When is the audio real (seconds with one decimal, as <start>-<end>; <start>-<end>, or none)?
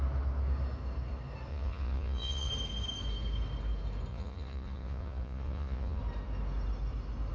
0.0-1.5; 2.5-4.1; 6.0-7.3